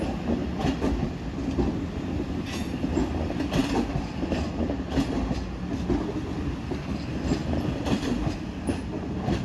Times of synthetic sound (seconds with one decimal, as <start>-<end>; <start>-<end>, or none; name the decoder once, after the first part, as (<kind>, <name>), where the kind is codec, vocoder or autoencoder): none